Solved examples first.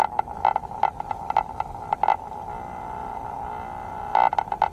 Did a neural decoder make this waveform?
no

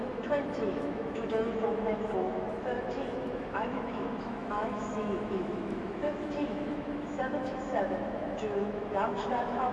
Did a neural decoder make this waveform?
yes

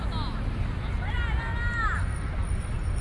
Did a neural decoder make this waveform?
no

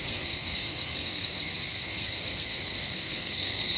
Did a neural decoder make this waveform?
yes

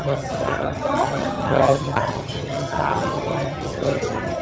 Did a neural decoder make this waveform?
yes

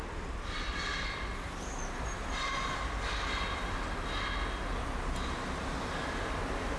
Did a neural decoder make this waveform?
no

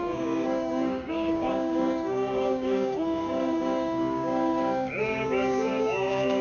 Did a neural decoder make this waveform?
yes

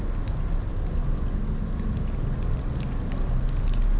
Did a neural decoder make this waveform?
no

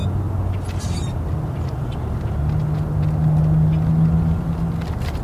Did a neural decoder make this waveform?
no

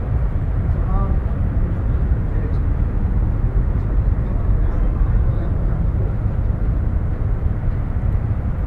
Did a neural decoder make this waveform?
yes